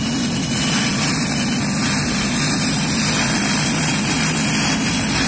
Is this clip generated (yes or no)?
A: no